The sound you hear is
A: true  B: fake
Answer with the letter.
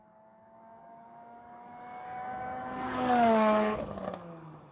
B